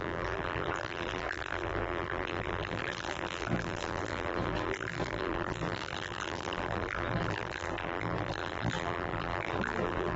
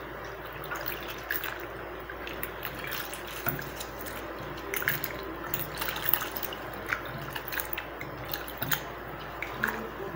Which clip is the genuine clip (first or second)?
second